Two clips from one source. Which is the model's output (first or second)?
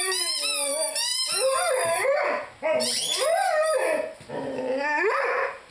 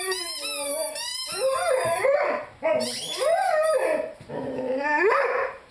second